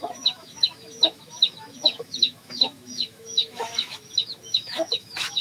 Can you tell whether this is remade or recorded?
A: remade